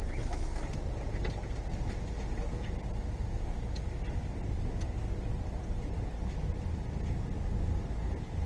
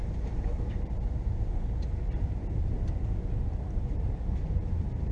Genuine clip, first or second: first